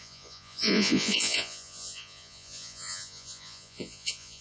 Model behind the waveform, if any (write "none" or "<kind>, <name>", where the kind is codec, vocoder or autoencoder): vocoder, Vocos